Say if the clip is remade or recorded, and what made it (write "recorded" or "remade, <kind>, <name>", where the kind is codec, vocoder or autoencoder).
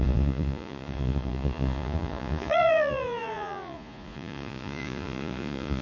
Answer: remade, vocoder, Vocos